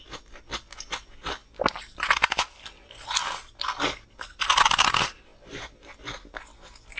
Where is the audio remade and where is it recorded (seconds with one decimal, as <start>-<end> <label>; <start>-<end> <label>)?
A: 0.0-7.0 recorded